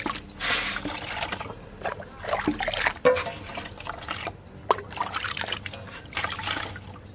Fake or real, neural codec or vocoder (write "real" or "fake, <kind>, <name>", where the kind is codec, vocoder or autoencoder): real